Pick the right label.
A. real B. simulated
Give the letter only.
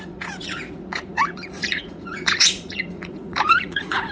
B